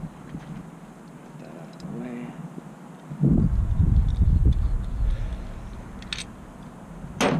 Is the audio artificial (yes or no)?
no